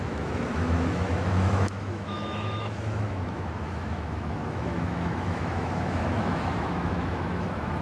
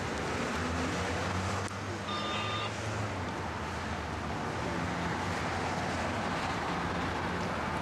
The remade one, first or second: first